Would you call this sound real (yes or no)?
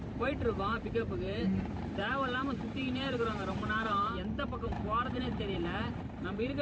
no